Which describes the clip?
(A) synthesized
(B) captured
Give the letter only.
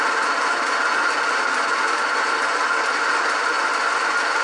B